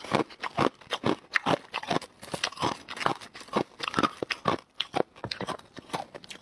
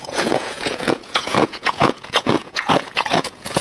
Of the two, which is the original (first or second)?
first